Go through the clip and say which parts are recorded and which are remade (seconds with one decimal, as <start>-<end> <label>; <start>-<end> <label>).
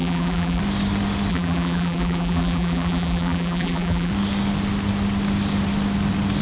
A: 0.0-0.6 remade; 0.6-1.3 recorded; 1.3-4.1 remade; 4.1-6.4 recorded